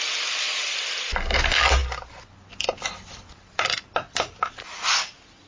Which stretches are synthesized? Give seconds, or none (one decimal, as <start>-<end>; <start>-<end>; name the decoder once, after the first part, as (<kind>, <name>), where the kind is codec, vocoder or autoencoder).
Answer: none